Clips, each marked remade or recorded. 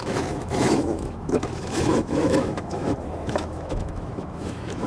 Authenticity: remade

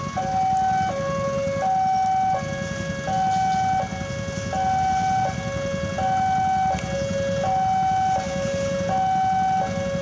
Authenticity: recorded